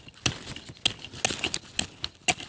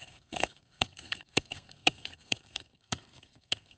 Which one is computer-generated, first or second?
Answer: second